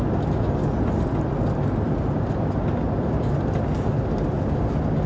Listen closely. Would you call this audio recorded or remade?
recorded